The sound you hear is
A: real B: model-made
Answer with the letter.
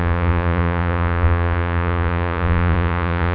B